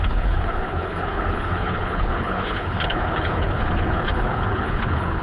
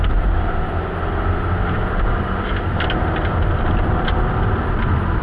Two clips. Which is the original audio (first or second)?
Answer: second